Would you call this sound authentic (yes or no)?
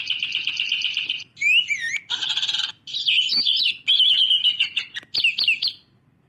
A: yes